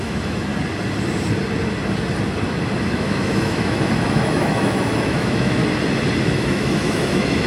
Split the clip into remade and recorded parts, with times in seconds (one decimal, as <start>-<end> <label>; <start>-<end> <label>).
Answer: 0.0-0.5 remade; 0.5-2.9 recorded; 2.9-5.6 remade; 5.6-6.2 recorded; 6.2-7.5 remade